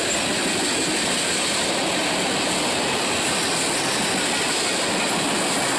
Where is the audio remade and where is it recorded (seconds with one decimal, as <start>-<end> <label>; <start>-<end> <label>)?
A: 0.0-5.8 recorded